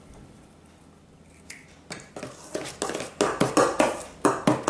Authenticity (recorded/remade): recorded